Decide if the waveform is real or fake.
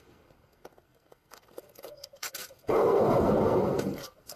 fake